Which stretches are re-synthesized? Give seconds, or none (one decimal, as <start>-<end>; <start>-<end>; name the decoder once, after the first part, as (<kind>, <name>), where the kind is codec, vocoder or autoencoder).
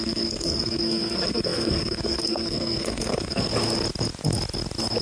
0.0-3.5 (codec, SNAC)